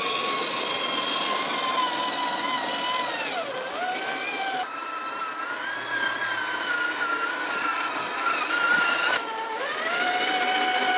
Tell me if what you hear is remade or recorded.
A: recorded